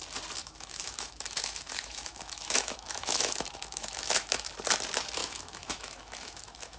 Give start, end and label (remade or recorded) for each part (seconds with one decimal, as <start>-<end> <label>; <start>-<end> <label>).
0.0-0.4 recorded; 0.4-4.5 remade; 4.5-5.2 recorded; 5.2-6.8 remade